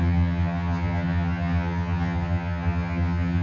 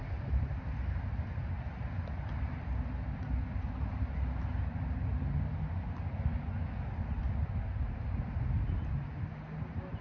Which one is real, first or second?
second